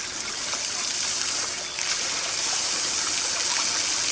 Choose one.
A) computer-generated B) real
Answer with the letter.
B